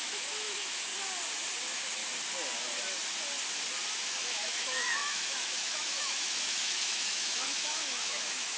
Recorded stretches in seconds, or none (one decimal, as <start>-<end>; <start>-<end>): 0.9-1.6; 2.0-4.0